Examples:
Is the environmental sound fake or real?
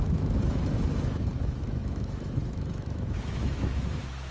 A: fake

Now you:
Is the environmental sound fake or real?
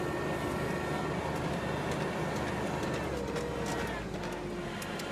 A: real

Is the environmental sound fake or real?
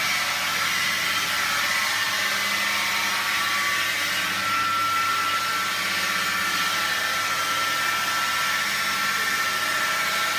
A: real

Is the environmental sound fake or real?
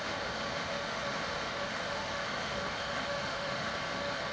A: fake